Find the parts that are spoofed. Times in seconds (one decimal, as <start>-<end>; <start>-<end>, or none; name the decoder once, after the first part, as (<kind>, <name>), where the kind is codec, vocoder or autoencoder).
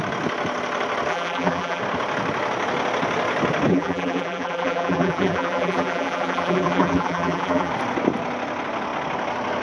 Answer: 1.1-1.8 (vocoder, BigVGAN v2); 3.7-7.7